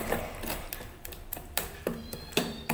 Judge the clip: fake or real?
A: fake